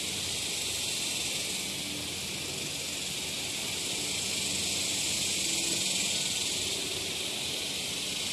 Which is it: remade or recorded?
recorded